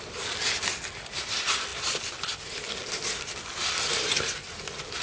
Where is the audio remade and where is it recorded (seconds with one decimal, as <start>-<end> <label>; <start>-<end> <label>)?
0.0-5.0 recorded